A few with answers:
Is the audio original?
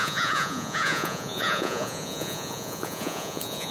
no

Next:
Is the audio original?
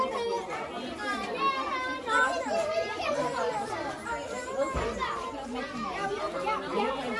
yes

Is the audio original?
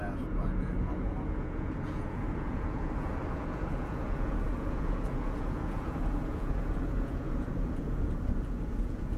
no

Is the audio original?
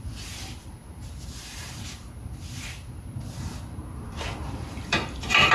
no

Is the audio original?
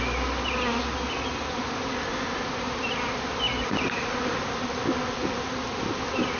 yes